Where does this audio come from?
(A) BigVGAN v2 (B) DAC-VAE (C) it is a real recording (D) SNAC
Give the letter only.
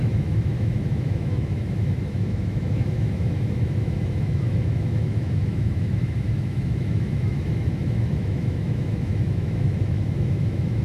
B